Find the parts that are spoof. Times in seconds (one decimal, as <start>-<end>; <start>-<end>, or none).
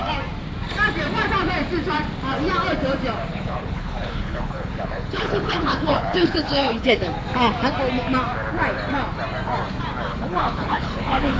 3.3-7.1; 10.1-11.4